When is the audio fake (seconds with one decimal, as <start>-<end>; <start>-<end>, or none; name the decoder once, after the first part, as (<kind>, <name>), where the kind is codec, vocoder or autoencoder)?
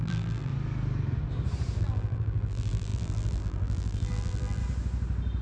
0.0-0.5 (vocoder, BigVGAN v2); 1.8-4.6